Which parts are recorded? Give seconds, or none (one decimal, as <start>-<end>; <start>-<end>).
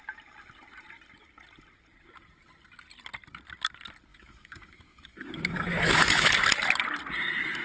0.0-4.1; 6.3-7.6